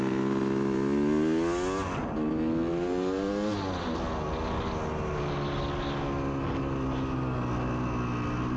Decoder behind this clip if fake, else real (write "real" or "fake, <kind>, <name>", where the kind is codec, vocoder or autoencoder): real